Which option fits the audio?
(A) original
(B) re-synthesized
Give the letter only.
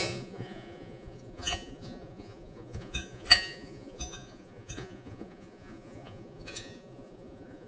B